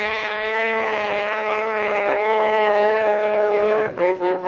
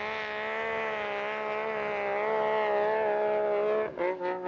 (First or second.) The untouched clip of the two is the second